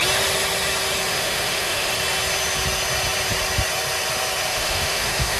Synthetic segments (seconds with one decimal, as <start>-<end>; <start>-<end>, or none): 1.1-1.9; 4.5-5.4

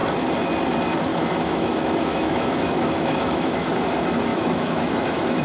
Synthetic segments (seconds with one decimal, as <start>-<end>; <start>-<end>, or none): 1.1-3.7; 4.3-5.4